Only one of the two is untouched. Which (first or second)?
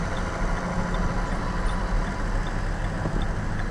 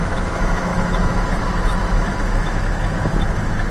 first